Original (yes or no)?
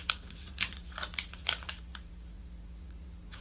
no